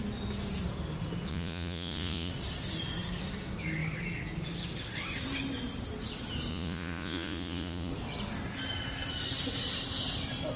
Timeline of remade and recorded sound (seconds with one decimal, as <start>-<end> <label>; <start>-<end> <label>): 0.0-1.3 recorded; 1.3-2.3 remade; 2.3-6.5 recorded; 6.5-7.9 remade; 7.9-10.6 recorded